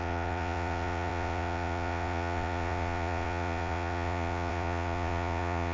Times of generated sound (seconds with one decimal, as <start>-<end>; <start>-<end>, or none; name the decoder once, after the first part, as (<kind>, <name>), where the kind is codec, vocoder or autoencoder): 0.0-5.7 (vocoder, Vocos)